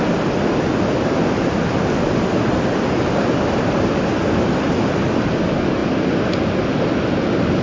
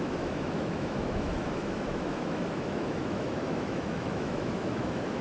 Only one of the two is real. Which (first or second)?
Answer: first